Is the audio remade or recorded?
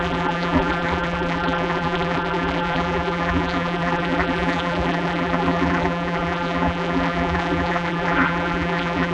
remade